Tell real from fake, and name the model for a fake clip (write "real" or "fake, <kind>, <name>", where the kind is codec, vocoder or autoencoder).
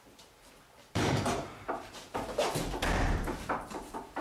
fake, vocoder, BigVGAN v2